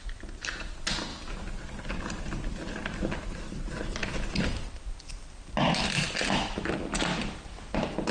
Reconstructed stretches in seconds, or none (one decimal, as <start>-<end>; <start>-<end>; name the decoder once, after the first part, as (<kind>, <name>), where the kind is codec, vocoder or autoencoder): none